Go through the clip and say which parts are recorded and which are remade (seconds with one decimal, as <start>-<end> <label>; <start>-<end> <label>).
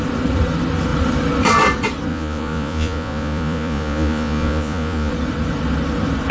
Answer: 0.0-2.1 recorded; 2.1-5.1 remade; 5.1-6.3 recorded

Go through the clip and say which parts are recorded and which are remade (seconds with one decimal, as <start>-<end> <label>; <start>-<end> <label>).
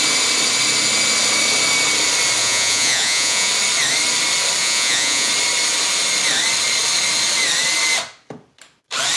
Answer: 0.0-2.4 recorded; 2.4-3.5 remade; 3.5-4.6 recorded; 4.6-5.3 remade; 5.3-9.2 recorded